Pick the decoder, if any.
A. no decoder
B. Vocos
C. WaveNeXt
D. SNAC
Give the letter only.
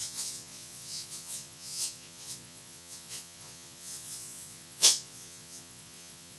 B